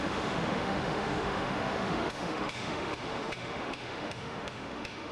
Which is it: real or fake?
fake